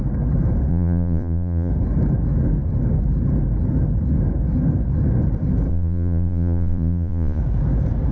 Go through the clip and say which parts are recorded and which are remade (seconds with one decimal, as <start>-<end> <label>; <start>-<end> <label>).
0.0-0.7 recorded; 0.7-1.7 remade; 1.7-5.7 recorded; 5.7-7.4 remade; 7.4-8.1 recorded